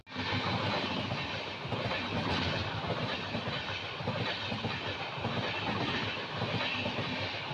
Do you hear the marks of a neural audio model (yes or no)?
no